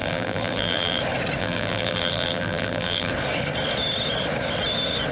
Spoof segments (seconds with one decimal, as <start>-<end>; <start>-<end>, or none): 0.0-1.0; 1.4-3.1